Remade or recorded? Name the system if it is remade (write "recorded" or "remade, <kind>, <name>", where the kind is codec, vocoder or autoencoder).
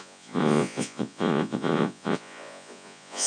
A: remade, vocoder, Vocos